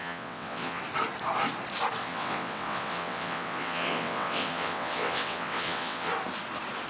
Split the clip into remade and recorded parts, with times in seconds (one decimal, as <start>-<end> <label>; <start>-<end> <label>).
0.0-0.8 remade; 0.8-2.0 recorded; 2.0-6.1 remade; 6.1-6.9 recorded